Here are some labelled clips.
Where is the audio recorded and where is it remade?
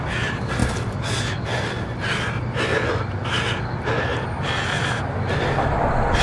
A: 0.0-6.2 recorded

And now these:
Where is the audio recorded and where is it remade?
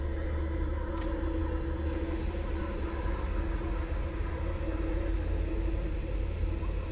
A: 0.0-6.9 recorded